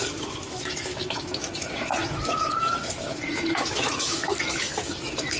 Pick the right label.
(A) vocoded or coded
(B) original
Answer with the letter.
A